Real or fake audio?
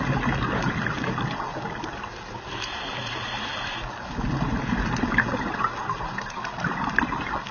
real